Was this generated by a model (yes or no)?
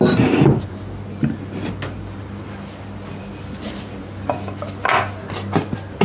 no